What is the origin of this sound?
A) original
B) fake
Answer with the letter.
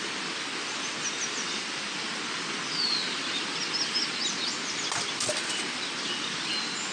A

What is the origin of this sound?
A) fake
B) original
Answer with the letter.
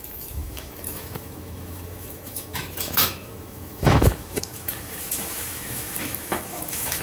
A